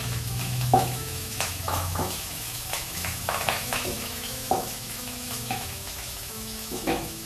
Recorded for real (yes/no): no